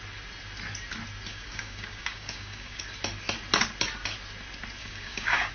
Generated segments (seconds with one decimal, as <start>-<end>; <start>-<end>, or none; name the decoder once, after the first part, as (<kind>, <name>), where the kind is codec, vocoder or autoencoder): 1.3-2.8 (codec, DAC); 4.8-5.5